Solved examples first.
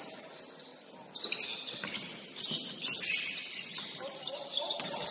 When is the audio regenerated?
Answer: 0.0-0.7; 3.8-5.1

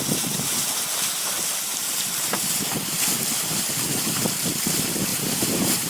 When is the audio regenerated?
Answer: 1.7-2.4; 5.1-5.9

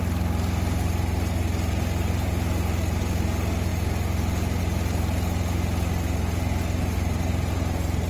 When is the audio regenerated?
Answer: none

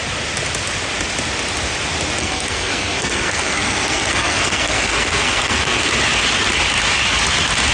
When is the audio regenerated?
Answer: 2.2-5.8

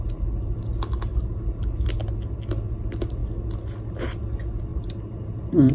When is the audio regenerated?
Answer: 4.7-5.7

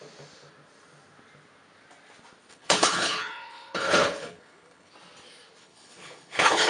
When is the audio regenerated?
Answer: 2.5-4.9; 5.6-6.7